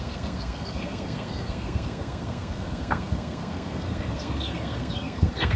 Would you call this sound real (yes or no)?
no